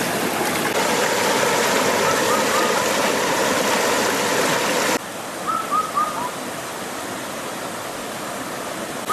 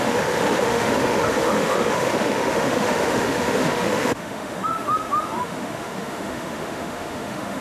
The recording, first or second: first